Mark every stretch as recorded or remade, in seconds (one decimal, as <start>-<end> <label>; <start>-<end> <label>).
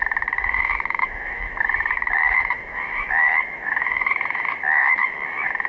0.0-5.7 remade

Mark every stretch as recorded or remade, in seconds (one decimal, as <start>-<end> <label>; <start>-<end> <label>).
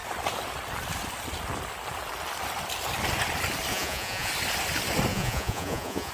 0.0-3.7 recorded; 3.7-4.3 remade; 4.3-5.1 recorded; 5.1-6.1 remade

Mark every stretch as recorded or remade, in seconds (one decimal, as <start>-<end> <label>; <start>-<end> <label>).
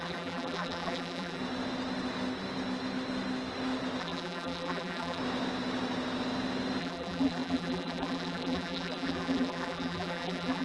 0.0-1.4 remade; 1.4-4.0 recorded; 4.0-5.2 remade; 5.2-6.8 recorded; 6.8-10.6 remade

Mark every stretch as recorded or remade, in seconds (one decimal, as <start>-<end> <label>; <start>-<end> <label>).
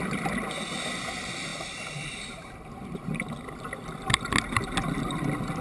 0.0-1.5 recorded; 1.5-3.5 remade; 3.5-5.6 recorded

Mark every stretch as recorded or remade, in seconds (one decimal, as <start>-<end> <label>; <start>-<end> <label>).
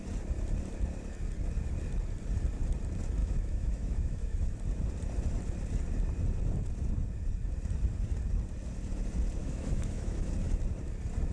0.0-3.2 recorded; 3.2-4.6 remade; 4.6-9.4 recorded; 9.4-10.3 remade; 10.3-11.3 recorded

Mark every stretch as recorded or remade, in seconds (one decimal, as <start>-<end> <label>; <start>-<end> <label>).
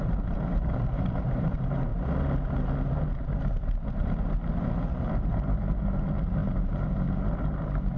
0.0-1.9 remade; 1.9-3.9 recorded; 3.9-4.4 remade; 4.4-4.9 recorded; 4.9-8.0 remade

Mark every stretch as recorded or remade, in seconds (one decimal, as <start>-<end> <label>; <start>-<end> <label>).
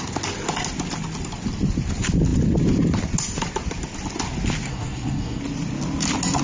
0.0-4.7 recorded; 4.7-5.4 remade; 5.4-6.4 recorded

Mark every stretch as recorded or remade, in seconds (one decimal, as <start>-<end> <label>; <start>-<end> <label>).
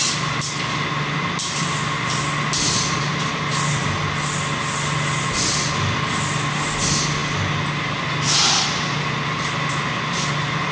0.0-10.7 recorded